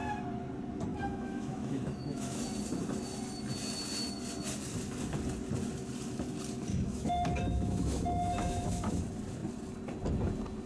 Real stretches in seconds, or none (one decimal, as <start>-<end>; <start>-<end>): 0.0-0.9; 2.4-6.7; 9.0-10.7